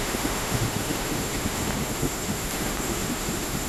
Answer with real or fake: fake